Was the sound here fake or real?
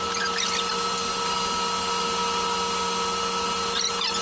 real